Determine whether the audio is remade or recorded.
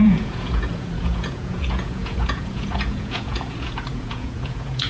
remade